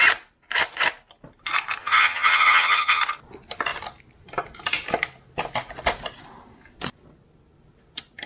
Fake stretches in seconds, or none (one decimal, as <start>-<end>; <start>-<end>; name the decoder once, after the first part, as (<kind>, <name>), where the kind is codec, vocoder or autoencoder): 1.8-3.0 (vocoder, HiFi-GAN)